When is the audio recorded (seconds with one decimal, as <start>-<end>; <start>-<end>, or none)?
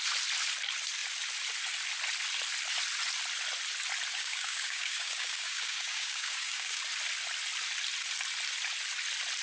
0.0-4.1; 6.8-9.4